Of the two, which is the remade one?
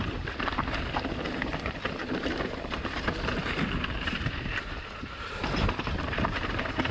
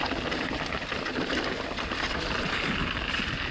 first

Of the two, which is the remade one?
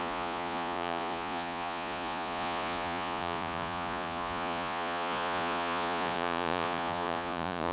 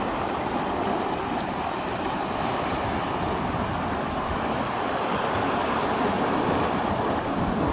first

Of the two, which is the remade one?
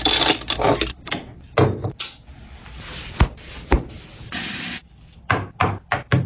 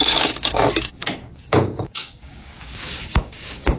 second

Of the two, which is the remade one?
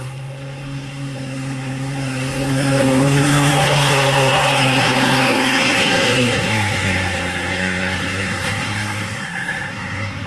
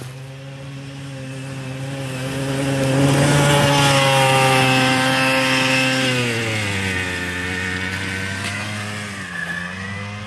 first